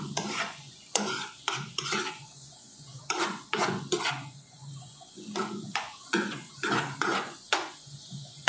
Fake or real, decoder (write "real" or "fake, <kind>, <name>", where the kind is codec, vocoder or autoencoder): fake, vocoder, Vocos